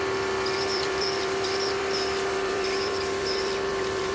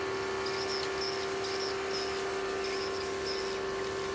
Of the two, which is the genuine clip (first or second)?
second